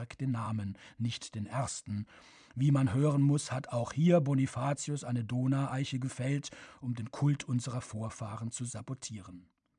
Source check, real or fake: real